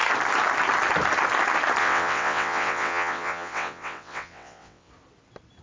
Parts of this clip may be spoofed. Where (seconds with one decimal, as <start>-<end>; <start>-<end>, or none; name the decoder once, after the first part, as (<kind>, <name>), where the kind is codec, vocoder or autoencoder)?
1.8-4.9 (vocoder, WaveNeXt)